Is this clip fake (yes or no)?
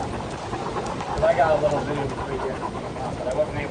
no